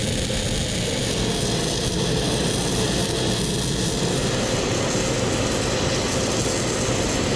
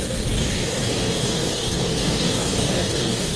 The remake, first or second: second